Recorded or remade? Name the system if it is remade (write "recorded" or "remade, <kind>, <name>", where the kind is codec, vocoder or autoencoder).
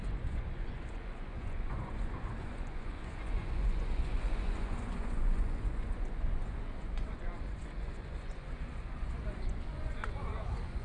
remade, vocoder, Vocos